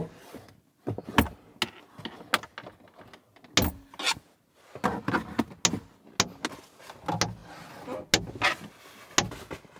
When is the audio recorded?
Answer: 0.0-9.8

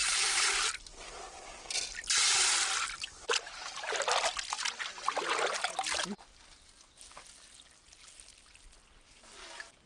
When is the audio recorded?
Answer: 0.7-9.9

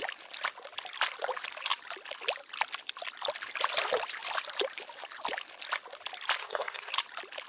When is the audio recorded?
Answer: 0.0-6.4; 6.9-7.5

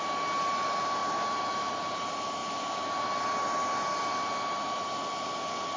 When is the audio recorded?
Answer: 0.0-5.8